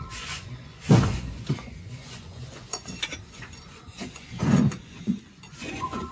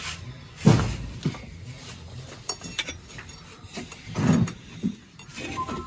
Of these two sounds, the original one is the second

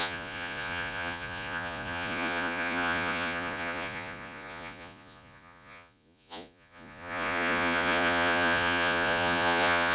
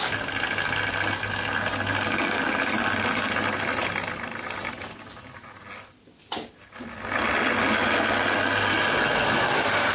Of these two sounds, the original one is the second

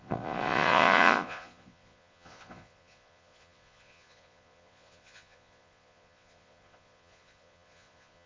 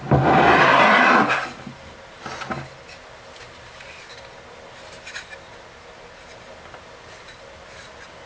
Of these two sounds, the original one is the second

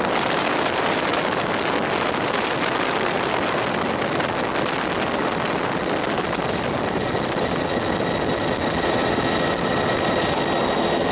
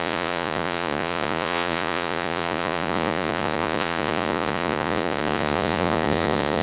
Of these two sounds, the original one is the first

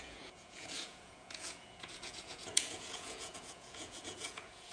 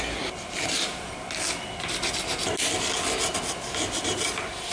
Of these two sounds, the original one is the second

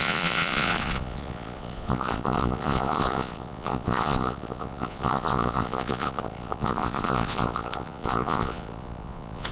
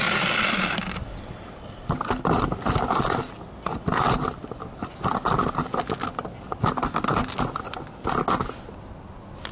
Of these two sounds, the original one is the second